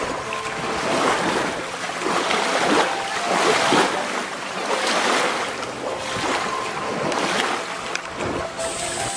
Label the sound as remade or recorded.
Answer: recorded